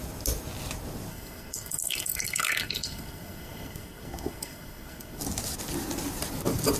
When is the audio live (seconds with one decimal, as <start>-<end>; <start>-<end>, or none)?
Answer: 0.0-1.1; 5.2-6.8

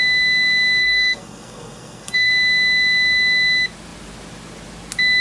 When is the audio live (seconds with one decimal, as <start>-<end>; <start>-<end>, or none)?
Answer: 0.0-0.8; 2.3-5.2